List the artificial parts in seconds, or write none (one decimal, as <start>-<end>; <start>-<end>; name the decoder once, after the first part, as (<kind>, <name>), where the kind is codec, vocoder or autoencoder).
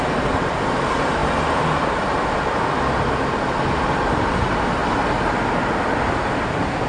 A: none